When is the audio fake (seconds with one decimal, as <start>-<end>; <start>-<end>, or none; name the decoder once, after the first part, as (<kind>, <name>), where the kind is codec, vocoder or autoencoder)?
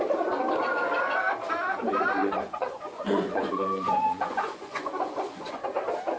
2.2-5.6 (vocoder, Vocos)